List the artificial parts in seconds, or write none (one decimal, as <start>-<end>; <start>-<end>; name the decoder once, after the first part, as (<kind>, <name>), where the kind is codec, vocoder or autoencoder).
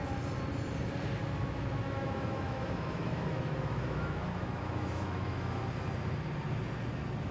1.2-5.6 (autoencoder, DAC-VAE)